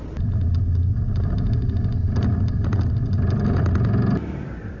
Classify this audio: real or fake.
real